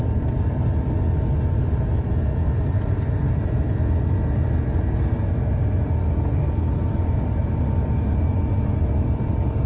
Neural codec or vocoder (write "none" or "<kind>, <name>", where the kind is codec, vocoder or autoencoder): none